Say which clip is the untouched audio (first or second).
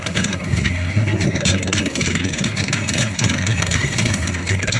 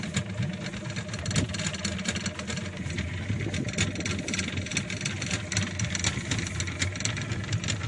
second